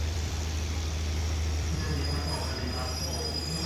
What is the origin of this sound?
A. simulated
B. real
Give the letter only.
A